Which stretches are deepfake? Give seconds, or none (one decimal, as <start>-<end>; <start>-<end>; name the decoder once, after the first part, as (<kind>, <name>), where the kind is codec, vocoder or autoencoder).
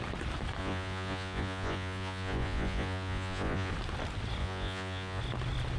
0.6-3.7 (vocoder, Vocos); 4.4-5.2